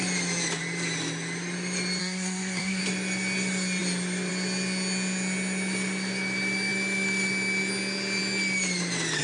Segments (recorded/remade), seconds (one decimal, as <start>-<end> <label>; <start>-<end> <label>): 0.0-2.0 recorded; 2.0-2.8 remade; 2.8-9.2 recorded

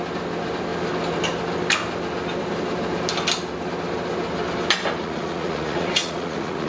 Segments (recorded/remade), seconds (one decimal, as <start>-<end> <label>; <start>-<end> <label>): 0.0-5.0 recorded; 5.0-6.7 remade

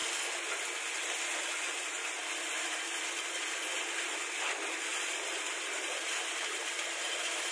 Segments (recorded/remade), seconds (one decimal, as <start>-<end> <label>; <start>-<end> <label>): 0.0-4.9 recorded; 4.9-7.0 remade; 7.0-7.5 recorded

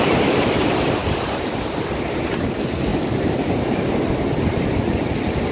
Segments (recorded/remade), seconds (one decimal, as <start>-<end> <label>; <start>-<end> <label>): 0.0-1.0 recorded; 1.0-2.3 remade; 2.3-2.9 recorded; 2.9-3.9 remade; 3.9-5.5 recorded